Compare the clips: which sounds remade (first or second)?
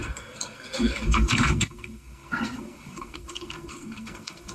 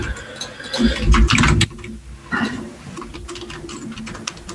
first